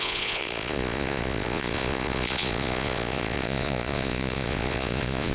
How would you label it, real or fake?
fake